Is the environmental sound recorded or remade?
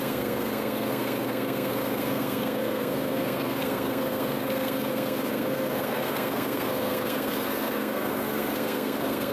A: remade